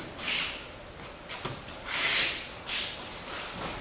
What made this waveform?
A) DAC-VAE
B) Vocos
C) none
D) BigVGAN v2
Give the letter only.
C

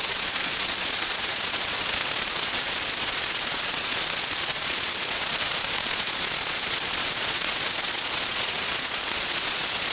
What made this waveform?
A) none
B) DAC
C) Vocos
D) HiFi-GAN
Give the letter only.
C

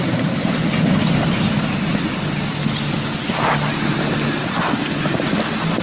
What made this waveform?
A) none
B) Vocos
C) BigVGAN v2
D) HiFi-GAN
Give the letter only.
A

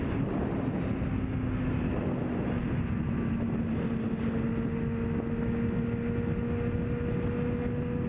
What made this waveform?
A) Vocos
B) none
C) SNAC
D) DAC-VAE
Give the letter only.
B